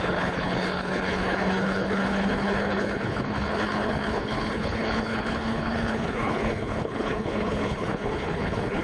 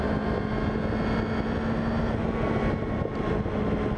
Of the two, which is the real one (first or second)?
second